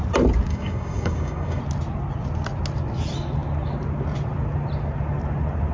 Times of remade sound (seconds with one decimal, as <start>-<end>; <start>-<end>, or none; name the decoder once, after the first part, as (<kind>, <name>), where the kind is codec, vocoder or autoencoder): 0.5-1.6 (codec, DAC)